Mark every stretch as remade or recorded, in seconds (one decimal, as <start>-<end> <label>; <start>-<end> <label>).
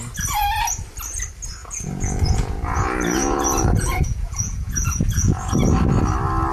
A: 0.0-1.6 recorded; 1.6-5.5 remade; 5.5-6.5 recorded